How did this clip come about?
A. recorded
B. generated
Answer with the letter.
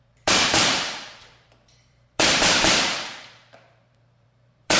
B